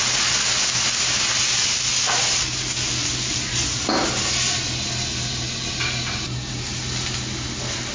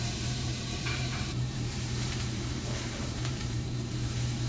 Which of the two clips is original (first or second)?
first